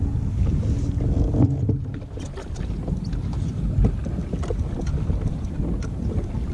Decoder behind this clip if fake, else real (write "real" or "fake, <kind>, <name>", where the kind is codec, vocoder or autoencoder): real